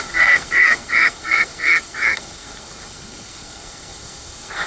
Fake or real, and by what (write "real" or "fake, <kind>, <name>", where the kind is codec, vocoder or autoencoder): fake, codec, SNAC